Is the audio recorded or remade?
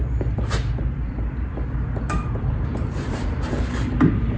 remade